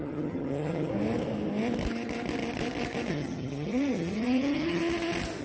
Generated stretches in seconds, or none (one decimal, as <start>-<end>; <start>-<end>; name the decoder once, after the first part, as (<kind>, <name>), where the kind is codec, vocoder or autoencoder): 0.0-0.9 (vocoder, HiFi-GAN); 3.1-4.8